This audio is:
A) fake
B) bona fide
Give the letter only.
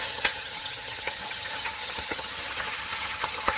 A